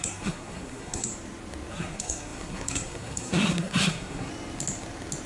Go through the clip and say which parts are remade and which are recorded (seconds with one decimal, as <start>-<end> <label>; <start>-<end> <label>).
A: 0.0-1.1 remade; 1.1-1.7 recorded; 1.7-4.3 remade; 4.3-5.3 recorded